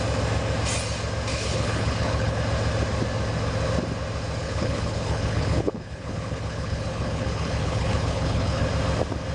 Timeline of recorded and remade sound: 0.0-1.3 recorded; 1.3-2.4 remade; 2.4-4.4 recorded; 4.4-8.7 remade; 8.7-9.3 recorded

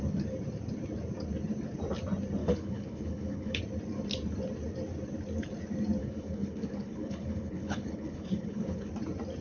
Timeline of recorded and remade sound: 0.0-2.4 recorded; 2.4-3.6 remade; 3.6-6.0 recorded; 6.0-8.9 remade; 8.9-9.4 recorded

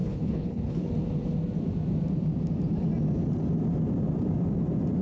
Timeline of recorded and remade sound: 0.0-0.9 remade; 0.9-5.0 recorded

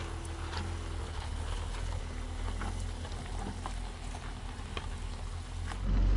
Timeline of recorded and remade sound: 0.0-1.0 recorded; 1.0-2.0 remade; 2.0-6.2 recorded